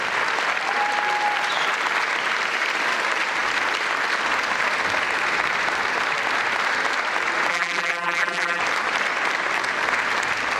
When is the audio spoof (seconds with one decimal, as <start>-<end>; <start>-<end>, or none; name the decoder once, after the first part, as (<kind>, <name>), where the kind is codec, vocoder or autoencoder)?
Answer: 7.5-8.6 (vocoder, BigVGAN v2)